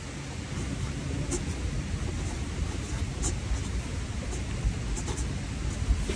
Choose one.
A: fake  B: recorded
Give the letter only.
B